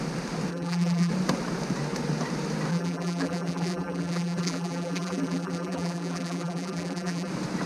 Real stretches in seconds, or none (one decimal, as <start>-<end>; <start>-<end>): 0.0-0.5; 1.1-2.7; 7.3-7.7

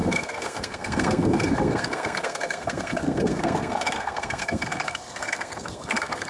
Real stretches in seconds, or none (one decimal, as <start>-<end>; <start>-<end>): none

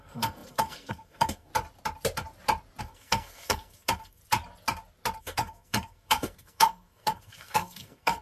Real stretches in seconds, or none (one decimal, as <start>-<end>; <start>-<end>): 1.5-2.8; 4.2-5.2

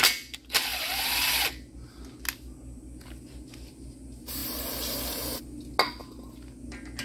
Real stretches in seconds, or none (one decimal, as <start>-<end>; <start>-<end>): 0.0-0.7; 1.3-7.0

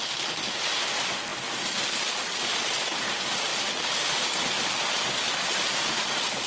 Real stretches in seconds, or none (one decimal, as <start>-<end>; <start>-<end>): 0.0-6.5

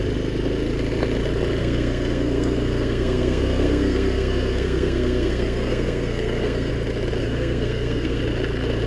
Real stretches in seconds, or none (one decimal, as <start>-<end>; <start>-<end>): 0.0-1.6; 6.7-7.2; 8.2-8.9

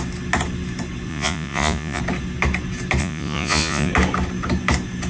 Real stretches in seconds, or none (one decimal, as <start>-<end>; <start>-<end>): 0.0-1.1; 2.0-3.0; 3.9-5.1